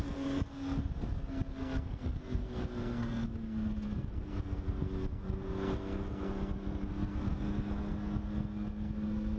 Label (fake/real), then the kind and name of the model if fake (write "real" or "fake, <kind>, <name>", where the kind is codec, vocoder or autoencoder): fake, codec, SNAC